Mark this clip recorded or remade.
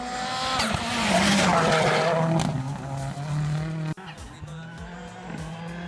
recorded